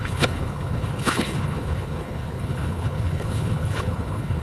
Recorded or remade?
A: remade